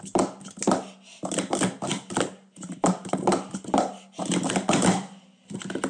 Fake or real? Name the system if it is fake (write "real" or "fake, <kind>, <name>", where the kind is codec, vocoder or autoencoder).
real